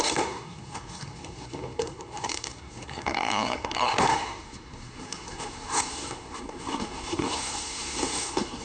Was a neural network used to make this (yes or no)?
yes